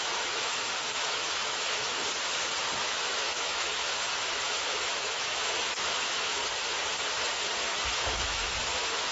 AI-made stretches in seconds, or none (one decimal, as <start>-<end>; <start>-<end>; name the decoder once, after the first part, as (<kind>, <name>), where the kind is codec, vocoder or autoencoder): 0.0-1.8 (autoencoder, DAC-VAE); 2.8-6.4; 7.6-9.1